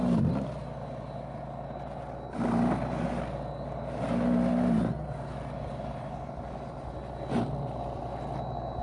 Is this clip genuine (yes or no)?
yes